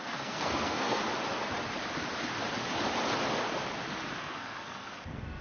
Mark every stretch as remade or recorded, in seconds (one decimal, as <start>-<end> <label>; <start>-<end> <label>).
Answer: 0.0-1.0 remade; 1.0-4.2 recorded; 4.2-5.4 remade